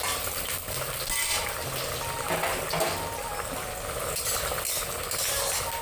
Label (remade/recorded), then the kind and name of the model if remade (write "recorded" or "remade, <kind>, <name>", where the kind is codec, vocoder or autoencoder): recorded